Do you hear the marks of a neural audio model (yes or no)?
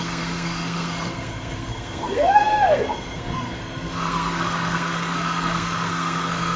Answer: yes